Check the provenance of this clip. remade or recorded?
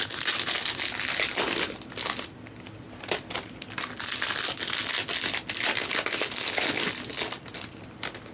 recorded